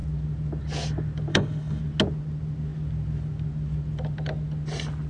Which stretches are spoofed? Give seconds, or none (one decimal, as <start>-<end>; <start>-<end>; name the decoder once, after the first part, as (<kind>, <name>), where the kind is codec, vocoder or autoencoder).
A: 1.3-1.8 (codec, HILCodec)